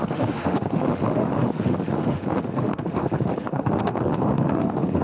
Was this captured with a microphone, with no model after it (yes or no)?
no